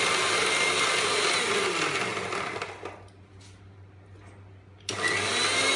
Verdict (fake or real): real